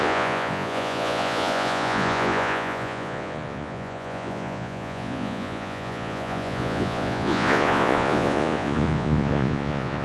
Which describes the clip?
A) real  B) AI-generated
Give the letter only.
B